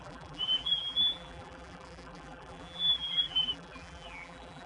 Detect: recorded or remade remade